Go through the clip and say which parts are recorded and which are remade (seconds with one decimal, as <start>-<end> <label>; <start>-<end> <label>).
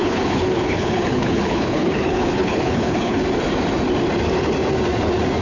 0.0-3.2 remade; 3.2-5.4 recorded